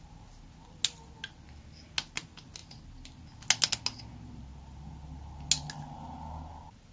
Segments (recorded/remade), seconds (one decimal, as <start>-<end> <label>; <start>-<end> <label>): 0.0-6.9 recorded